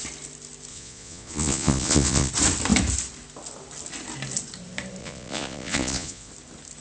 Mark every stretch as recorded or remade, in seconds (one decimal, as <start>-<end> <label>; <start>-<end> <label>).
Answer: 0.0-0.7 recorded; 0.7-2.3 remade; 2.3-5.0 recorded; 5.0-6.3 remade; 6.3-6.8 recorded